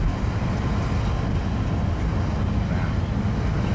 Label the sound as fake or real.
real